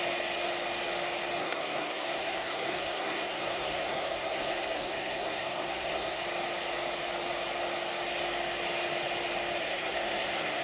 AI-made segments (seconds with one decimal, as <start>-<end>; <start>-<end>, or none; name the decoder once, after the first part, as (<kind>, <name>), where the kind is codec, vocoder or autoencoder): 1.4-6.2 (codec, SNAC); 9.6-10.6